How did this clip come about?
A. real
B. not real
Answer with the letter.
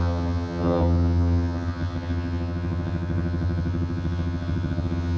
B